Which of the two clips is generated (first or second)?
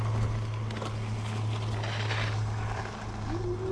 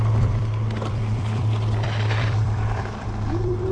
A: second